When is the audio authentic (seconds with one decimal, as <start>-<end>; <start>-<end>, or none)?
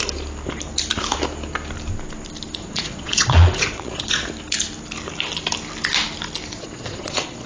0.0-2.6; 4.3-6.5